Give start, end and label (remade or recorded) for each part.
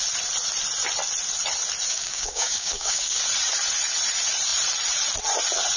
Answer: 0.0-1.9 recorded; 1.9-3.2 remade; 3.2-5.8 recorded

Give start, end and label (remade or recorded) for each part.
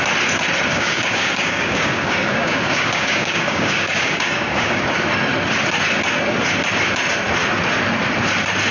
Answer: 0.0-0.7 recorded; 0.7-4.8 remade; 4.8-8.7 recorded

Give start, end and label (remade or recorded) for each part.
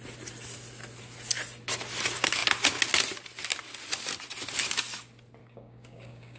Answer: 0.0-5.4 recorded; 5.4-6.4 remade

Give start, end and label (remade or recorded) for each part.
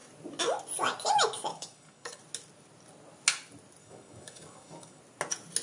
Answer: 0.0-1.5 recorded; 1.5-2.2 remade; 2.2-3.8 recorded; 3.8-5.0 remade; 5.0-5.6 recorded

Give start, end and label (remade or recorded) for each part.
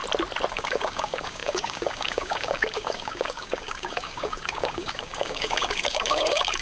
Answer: 0.0-0.5 recorded; 0.5-6.6 remade